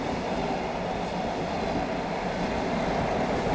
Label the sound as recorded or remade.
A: recorded